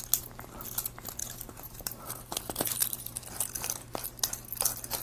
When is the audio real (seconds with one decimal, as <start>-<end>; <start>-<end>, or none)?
0.0-1.2; 2.4-5.0